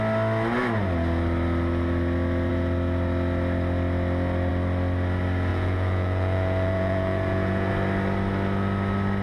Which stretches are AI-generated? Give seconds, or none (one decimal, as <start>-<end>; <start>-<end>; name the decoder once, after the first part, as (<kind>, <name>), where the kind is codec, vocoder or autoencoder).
5.5-7.7 (vocoder, Vocos)